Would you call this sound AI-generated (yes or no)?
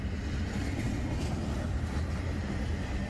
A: no